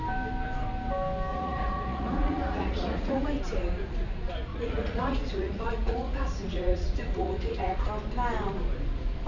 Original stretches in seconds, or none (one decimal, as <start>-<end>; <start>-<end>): 0.0-1.3; 3.3-4.5; 7.9-9.3